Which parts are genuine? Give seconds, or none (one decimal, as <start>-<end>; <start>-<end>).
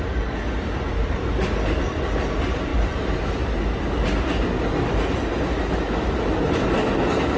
0.0-7.4